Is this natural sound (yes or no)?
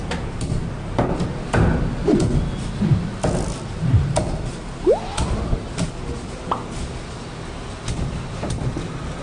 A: yes